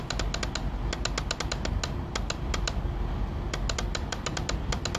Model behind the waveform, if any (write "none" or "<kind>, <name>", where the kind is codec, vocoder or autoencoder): none